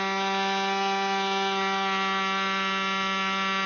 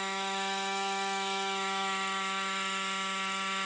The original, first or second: first